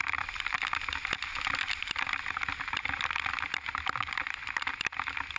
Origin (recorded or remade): recorded